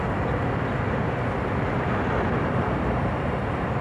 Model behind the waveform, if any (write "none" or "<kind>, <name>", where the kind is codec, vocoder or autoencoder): none